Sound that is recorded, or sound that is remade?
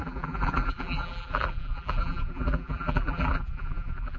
remade